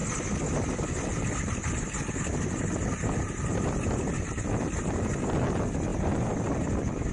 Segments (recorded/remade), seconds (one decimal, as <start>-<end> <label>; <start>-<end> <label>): 0.0-7.1 recorded